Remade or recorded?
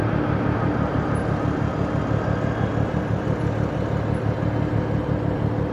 recorded